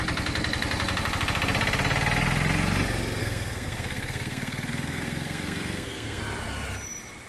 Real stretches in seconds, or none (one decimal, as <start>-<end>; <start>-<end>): 0.0-3.2; 6.2-7.3